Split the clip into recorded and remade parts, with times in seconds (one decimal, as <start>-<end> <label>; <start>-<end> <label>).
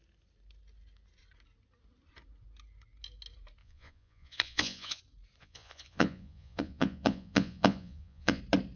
0.0-3.6 recorded; 3.6-5.0 remade; 5.0-5.4 recorded; 5.4-8.4 remade; 8.4-8.8 recorded